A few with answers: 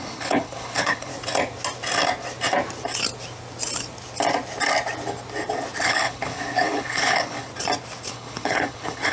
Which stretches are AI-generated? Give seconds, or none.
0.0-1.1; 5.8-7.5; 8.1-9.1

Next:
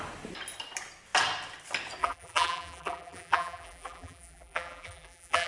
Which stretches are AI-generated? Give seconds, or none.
2.0-5.5